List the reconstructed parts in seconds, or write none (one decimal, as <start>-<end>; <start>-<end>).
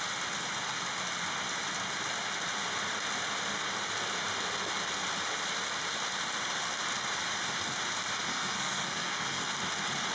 8.3-9.4